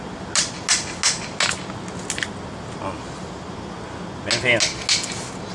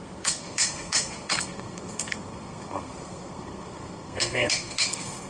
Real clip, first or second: first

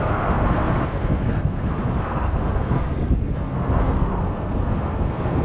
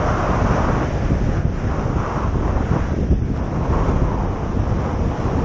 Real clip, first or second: second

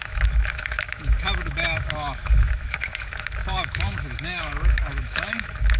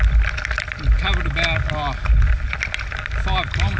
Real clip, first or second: second